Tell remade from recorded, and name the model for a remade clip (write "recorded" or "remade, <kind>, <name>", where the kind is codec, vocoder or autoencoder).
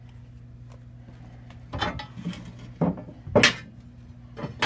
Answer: recorded